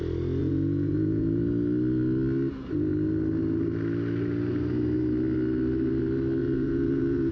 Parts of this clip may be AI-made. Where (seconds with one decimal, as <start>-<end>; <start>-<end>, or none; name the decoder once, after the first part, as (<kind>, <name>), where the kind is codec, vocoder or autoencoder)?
0.4-1.4 (vocoder, Vocos); 6.4-7.3